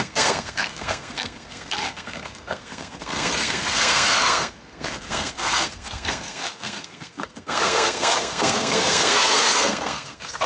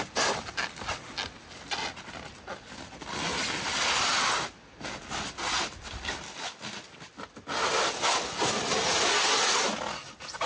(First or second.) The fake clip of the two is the first